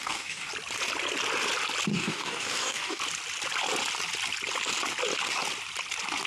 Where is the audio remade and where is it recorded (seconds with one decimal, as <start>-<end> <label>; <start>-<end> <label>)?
0.0-0.5 remade; 0.5-1.9 recorded; 1.9-3.0 remade; 3.0-6.3 recorded